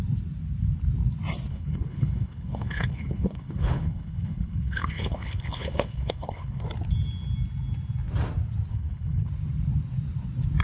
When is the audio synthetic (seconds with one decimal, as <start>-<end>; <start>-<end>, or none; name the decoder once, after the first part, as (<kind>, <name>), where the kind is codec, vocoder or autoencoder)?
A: 1.5-6.6 (codec, HILCodec); 8.7-9.3